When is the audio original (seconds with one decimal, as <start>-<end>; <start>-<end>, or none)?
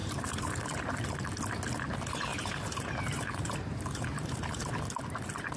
0.7-2.3; 4.7-5.6